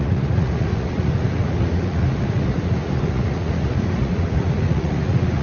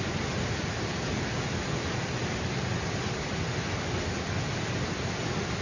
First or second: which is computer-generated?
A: first